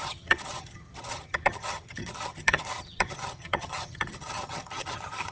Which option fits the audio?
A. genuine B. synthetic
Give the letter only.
B